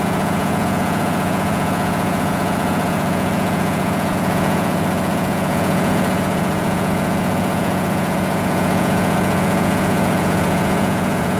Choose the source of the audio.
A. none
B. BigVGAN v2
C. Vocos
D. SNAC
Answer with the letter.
C